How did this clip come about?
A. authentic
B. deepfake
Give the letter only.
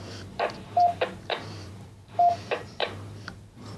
B